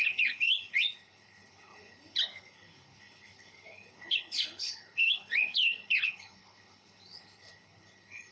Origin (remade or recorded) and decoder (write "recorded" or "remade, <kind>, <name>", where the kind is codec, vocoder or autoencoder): remade, codec, HILCodec